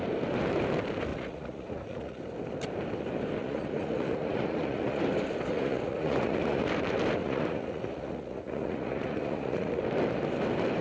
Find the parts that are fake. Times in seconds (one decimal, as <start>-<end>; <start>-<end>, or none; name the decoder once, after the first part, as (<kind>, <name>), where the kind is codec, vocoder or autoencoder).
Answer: 1.1-2.2 (vocoder, Vocos); 3.4-5.0; 5.5-6.7; 7.2-9.8